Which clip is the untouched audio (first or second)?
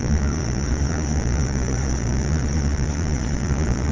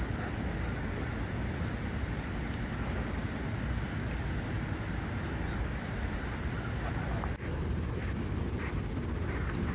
second